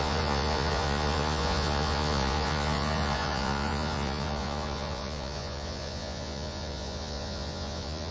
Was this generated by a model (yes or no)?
yes